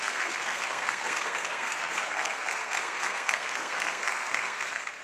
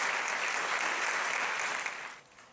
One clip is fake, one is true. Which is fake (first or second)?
first